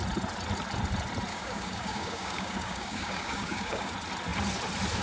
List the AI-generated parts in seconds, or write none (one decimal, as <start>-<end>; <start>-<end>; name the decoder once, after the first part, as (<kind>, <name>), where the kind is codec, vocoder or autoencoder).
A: 1.3-3.9 (codec, DAC)

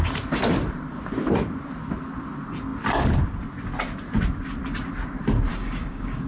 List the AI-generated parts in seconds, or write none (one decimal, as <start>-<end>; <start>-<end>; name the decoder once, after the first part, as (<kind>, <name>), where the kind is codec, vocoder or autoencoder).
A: 5.5-6.3 (codec, DAC)

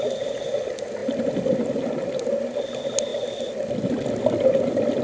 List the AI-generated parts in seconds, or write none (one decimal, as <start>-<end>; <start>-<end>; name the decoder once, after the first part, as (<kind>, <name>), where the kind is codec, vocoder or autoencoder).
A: none

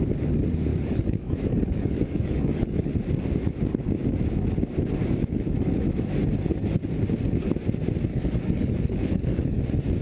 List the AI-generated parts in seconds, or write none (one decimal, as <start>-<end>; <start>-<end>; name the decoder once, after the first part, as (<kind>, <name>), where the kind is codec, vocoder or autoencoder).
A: 0.7-2.9 (codec, DAC); 8.1-9.6

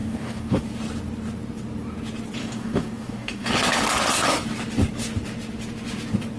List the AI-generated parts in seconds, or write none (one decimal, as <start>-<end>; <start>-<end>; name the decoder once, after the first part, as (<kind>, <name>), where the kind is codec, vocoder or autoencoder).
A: 0.0-0.6 (codec, DAC); 2.4-3.5

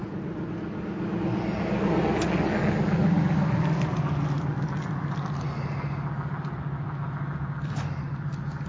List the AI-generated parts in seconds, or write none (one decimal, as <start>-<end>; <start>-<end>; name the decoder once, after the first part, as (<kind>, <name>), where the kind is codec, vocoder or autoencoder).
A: none